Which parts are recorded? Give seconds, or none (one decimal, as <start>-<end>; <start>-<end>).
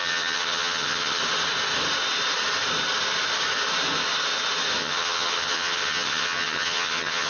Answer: 1.2-4.8